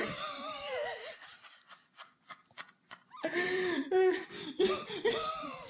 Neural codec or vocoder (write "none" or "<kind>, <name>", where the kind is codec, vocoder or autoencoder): vocoder, BigVGAN v2